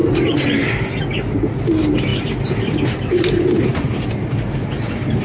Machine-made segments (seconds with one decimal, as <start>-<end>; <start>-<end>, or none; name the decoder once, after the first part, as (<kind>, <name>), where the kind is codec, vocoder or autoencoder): none